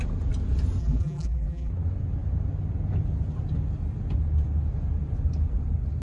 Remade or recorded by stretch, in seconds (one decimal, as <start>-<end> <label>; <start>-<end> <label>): 0.0-0.8 recorded; 0.8-1.7 remade; 1.7-6.0 recorded